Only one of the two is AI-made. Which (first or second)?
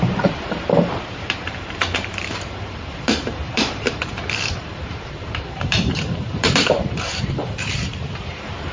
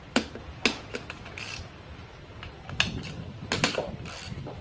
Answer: first